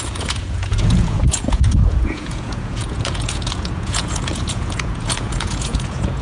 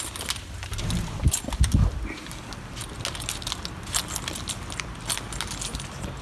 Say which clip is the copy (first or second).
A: first